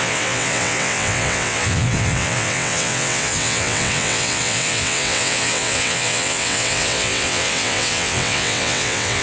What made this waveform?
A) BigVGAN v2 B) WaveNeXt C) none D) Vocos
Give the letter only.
B